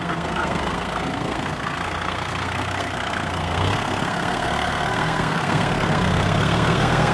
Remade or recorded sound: remade